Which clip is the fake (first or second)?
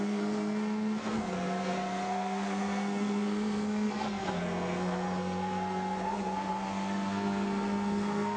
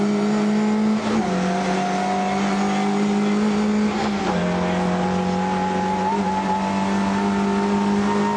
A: first